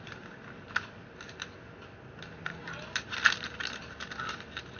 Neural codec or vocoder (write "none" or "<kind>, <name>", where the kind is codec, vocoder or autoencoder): none